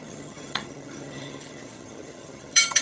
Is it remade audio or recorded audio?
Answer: remade